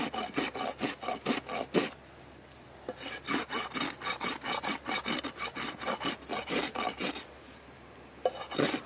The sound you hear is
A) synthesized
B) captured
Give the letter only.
B